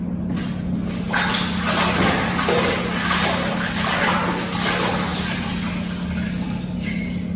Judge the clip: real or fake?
real